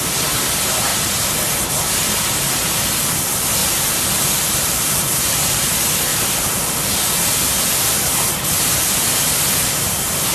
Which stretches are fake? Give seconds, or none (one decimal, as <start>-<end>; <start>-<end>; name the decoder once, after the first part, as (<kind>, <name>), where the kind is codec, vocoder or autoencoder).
3.6-5.2 (vocoder, BigVGAN v2); 6.1-6.7